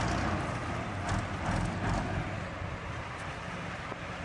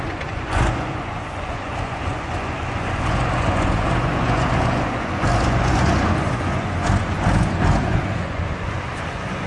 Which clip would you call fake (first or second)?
second